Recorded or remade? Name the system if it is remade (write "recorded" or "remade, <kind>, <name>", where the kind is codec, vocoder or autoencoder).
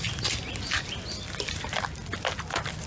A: recorded